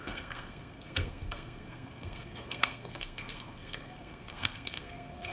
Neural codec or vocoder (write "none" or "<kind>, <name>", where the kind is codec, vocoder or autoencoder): codec, SNAC